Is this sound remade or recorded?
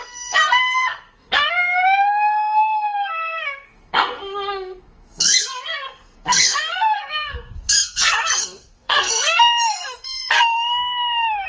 remade